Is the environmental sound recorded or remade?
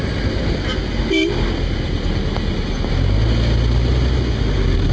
recorded